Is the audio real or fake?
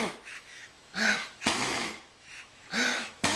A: fake